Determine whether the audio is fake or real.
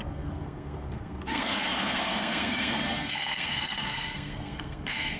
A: fake